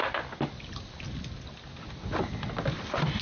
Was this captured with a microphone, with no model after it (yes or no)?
yes